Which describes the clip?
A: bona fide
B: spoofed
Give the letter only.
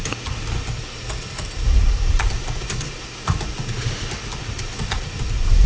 A